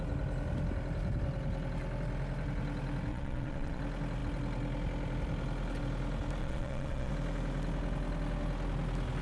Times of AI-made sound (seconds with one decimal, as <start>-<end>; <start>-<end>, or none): 3.1-3.8; 6.4-7.1